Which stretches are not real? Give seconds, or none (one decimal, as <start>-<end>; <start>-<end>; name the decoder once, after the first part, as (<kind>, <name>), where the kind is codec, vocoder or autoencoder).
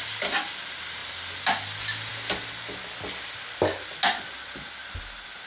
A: none